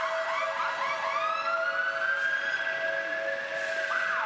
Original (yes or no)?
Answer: yes